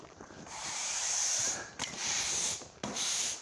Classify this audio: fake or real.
fake